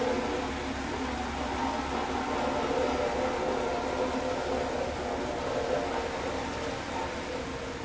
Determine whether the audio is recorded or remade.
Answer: recorded